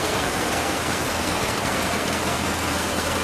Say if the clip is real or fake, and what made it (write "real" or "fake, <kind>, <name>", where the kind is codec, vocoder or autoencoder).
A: fake, codec, SNAC